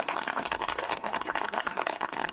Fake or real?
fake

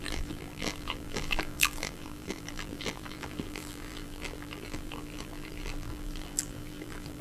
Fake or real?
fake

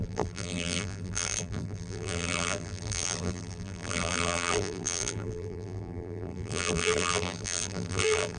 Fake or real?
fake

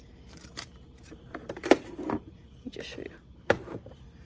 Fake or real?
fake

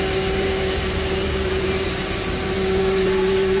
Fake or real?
fake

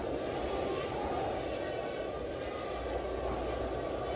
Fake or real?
real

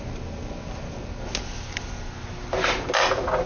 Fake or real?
real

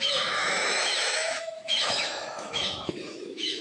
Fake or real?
fake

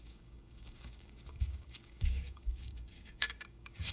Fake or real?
fake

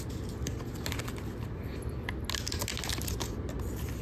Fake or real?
real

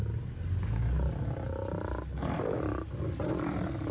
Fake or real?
real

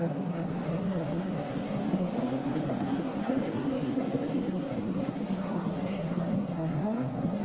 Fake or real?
fake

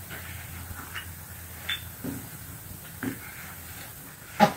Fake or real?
real